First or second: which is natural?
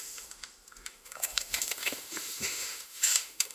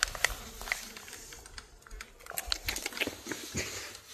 second